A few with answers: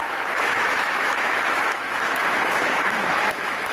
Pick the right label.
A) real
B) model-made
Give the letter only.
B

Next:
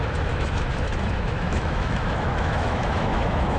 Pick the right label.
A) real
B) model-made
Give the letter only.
B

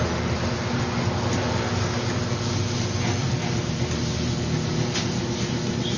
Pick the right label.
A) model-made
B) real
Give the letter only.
B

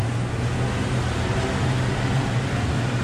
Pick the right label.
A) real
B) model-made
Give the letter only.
A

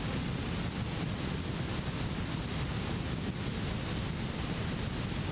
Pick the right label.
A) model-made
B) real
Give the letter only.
B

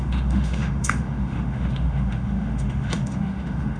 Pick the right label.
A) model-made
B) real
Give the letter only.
A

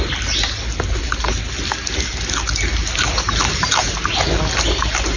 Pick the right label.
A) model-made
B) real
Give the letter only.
B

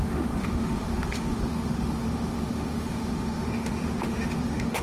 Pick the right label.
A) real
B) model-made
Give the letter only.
B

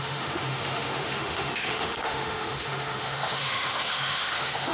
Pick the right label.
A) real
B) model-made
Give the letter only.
B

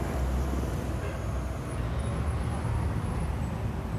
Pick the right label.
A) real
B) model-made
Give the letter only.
A